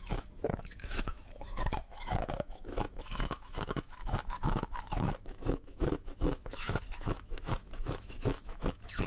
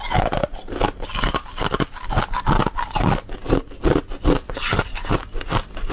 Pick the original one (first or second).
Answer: second